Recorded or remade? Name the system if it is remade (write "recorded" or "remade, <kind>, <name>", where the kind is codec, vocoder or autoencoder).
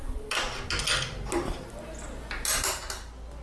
recorded